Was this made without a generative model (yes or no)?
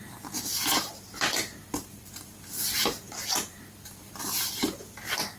no